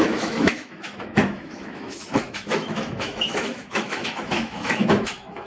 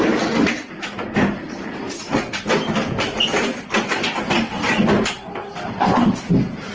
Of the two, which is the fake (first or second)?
first